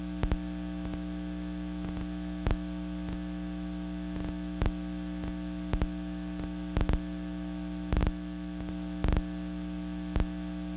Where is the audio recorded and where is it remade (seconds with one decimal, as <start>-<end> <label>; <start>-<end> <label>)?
0.0-10.8 recorded